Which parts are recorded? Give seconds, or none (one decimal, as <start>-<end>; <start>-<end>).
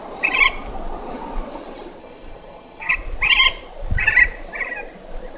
0.0-2.0; 2.9-5.4